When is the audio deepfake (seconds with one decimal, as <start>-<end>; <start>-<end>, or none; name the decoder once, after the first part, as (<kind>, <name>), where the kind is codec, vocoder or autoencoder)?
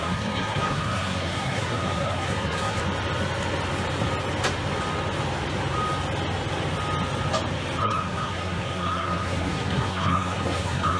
0.0-2.8 (codec, SNAC); 7.8-11.0